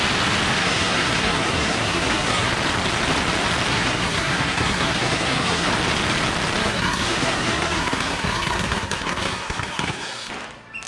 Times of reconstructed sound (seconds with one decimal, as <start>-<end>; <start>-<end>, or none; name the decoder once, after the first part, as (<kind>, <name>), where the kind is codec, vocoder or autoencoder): 0.6-2.5 (codec, SNAC); 3.7-5.7; 6.6-10.3